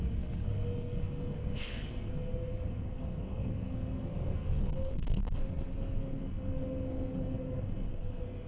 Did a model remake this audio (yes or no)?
yes